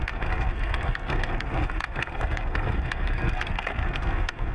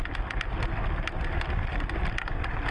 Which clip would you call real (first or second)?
second